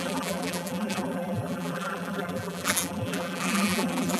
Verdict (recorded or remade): remade